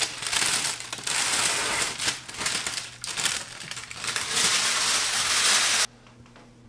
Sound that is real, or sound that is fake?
real